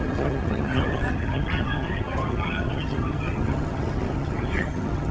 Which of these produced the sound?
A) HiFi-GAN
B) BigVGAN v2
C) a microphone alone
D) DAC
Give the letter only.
A